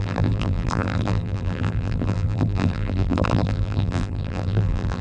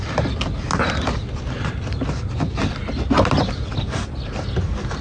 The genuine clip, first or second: second